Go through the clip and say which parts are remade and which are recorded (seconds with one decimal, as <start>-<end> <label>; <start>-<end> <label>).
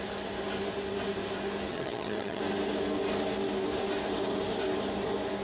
0.0-1.7 recorded; 1.7-2.4 remade; 2.4-5.4 recorded